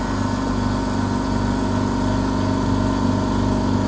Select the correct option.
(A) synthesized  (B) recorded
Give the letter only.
B